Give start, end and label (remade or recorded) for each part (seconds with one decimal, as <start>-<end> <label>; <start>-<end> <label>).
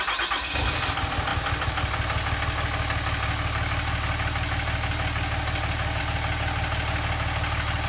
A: 0.0-7.9 recorded